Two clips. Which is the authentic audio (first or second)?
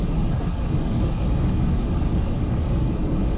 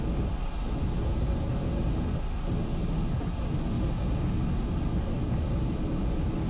second